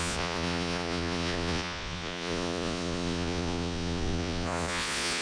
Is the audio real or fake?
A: fake